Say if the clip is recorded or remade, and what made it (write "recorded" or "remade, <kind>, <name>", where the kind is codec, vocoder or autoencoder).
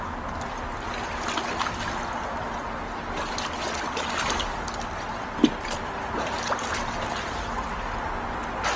recorded